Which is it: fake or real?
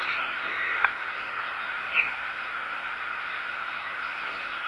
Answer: fake